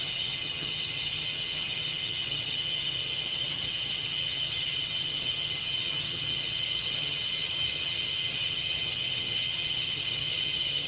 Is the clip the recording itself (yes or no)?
no